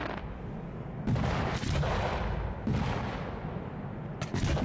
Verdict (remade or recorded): recorded